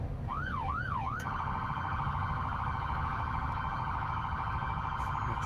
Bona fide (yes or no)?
no